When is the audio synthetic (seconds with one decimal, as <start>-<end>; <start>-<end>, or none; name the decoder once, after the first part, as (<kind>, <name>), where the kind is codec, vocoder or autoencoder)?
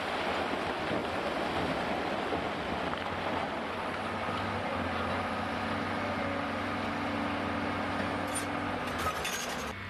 none